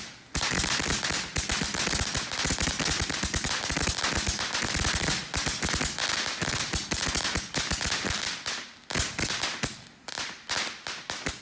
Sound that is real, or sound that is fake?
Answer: real